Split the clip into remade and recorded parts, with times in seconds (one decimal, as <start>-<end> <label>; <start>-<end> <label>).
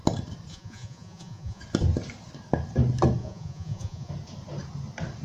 0.0-0.5 recorded; 0.5-1.6 remade; 1.6-3.2 recorded; 3.2-4.1 remade; 4.1-5.2 recorded